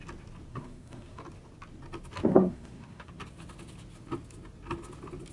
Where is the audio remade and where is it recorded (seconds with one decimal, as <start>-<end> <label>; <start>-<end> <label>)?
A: 0.0-0.5 recorded; 0.5-1.2 remade; 1.2-2.3 recorded; 2.3-3.1 remade; 3.1-5.3 recorded